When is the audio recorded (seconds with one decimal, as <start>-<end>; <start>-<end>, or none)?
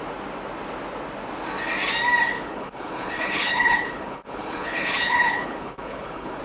0.0-2.3